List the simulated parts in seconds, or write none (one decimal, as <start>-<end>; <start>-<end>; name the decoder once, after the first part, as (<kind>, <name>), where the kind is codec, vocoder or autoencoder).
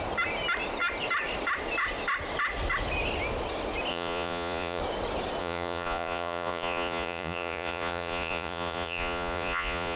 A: 3.9-4.8 (vocoder, Vocos); 5.4-10.0